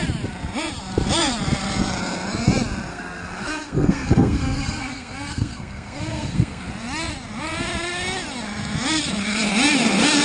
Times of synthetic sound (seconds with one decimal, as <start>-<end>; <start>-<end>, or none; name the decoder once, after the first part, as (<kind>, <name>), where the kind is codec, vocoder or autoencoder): 2.9-6.7 (codec, SNAC)